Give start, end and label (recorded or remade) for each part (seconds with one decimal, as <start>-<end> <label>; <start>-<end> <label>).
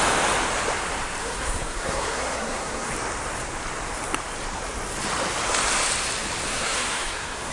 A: 0.0-1.2 recorded; 1.2-2.9 remade; 2.9-6.5 recorded; 6.5-7.5 remade